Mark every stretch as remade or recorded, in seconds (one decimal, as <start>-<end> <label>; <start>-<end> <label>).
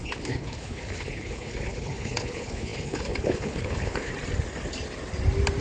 0.0-4.1 remade; 4.1-5.6 recorded